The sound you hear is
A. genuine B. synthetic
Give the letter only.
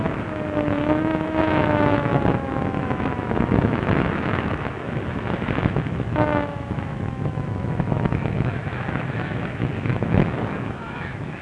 B